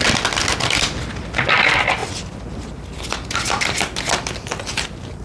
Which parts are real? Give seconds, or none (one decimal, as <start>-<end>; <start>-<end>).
0.0-5.2